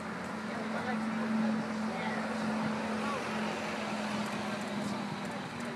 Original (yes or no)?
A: yes